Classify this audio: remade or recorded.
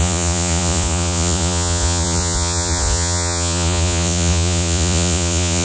remade